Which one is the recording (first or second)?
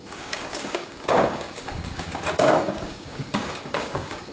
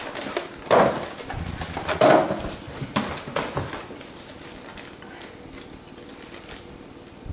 second